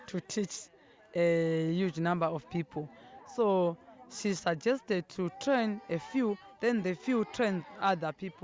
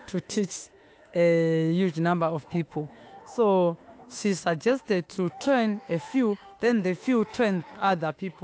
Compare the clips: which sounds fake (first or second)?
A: second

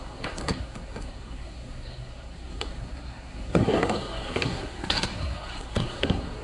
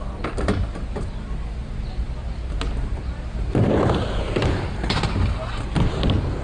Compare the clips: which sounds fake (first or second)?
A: first